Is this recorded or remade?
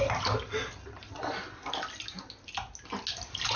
recorded